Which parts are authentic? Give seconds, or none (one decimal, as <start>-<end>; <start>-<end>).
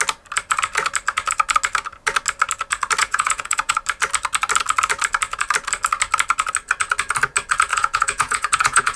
0.0-3.0; 3.7-7.7